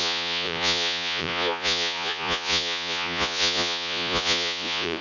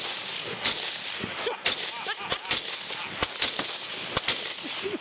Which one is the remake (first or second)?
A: first